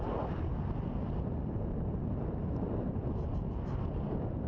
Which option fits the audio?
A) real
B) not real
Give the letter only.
A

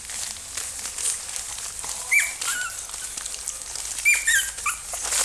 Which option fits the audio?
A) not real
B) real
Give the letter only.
B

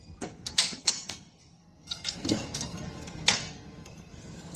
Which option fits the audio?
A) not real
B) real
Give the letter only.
A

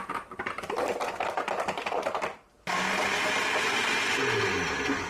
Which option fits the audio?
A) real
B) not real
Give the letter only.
A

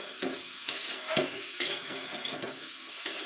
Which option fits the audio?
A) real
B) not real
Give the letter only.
B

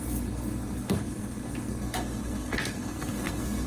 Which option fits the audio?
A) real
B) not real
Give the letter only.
B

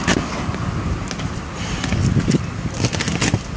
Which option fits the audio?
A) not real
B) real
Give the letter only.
B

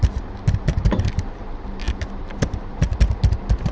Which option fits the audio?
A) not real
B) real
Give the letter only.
B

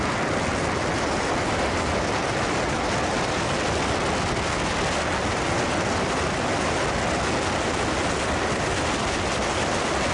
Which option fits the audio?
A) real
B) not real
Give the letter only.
A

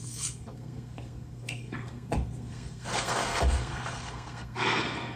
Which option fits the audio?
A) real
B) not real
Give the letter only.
B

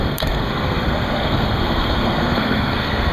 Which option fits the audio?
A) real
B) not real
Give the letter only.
B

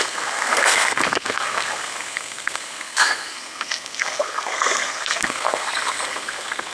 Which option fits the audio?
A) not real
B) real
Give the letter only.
A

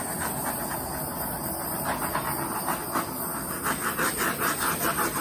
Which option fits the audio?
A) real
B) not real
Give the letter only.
A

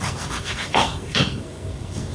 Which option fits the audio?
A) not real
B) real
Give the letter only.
A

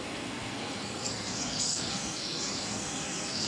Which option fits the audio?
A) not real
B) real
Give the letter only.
A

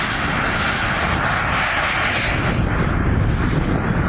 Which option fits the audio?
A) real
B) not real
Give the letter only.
A